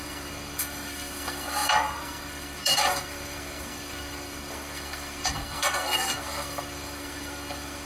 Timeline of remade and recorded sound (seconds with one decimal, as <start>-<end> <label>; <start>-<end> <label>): 0.0-7.9 remade